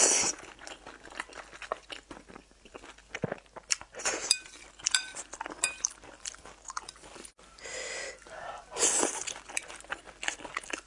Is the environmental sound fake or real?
real